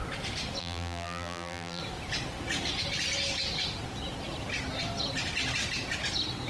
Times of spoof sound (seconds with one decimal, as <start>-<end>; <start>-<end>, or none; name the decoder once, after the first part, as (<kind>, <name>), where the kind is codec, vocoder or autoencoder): 0.6-1.8 (vocoder, BigVGAN v2)